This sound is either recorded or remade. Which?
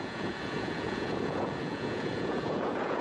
remade